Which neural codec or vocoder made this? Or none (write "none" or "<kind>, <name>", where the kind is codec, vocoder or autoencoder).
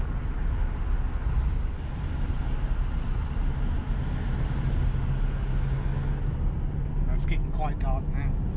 none